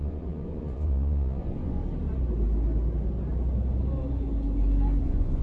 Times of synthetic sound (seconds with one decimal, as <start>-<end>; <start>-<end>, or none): 0.0-1.8; 5.0-5.4